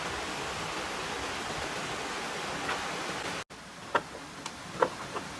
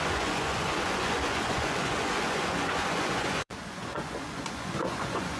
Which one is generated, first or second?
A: second